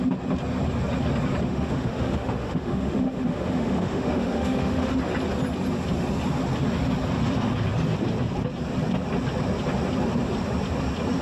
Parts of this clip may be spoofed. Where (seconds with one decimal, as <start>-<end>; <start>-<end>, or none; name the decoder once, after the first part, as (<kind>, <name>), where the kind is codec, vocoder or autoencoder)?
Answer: 1.5-4.9 (autoencoder, DAC-VAE)